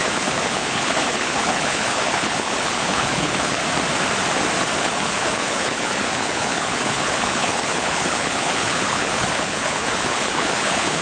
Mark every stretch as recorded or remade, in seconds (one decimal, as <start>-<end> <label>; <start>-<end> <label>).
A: 0.0-3.6 remade; 3.6-4.8 recorded; 4.8-11.0 remade